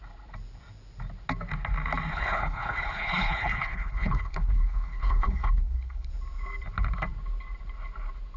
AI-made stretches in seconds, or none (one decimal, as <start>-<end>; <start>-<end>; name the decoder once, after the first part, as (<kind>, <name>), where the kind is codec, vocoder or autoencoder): 2.1-6.1 (codec, HILCodec)